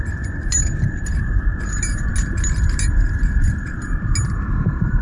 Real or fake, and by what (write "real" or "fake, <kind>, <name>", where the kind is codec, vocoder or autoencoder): real